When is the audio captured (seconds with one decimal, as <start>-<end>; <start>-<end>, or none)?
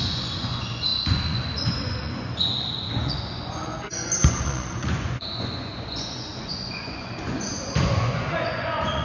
none